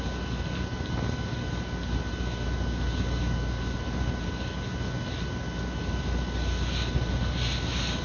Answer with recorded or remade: recorded